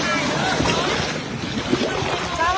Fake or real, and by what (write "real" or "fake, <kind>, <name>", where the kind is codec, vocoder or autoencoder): real